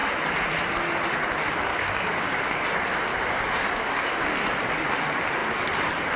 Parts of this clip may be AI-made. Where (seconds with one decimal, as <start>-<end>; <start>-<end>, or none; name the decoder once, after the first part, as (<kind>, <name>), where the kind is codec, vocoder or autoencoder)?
1.7-2.4 (codec, DAC); 3.1-4.2